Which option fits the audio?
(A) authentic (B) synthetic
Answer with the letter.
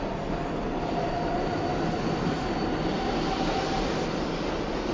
A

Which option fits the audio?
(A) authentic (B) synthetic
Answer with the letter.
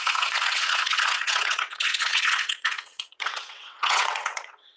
B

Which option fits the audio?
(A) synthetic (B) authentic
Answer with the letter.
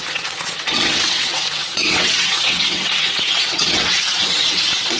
A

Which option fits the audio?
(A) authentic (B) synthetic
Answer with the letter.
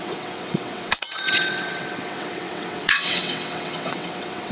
B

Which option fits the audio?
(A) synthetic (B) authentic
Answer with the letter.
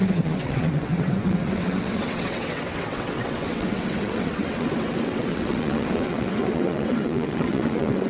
A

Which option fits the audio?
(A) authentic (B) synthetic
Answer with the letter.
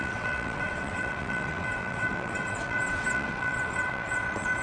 B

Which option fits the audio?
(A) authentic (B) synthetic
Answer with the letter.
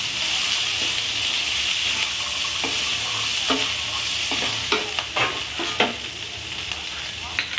A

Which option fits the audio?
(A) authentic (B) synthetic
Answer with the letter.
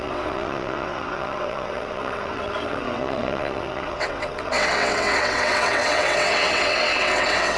B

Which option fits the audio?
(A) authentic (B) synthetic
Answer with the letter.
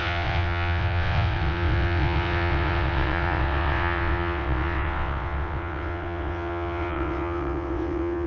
B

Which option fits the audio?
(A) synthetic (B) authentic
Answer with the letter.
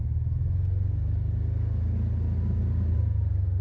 B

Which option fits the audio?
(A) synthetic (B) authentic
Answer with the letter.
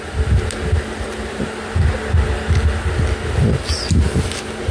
B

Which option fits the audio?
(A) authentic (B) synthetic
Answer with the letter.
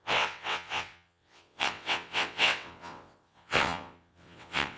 B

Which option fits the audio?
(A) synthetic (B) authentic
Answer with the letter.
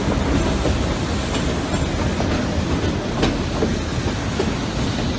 B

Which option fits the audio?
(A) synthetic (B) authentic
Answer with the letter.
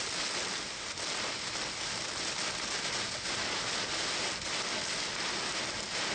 B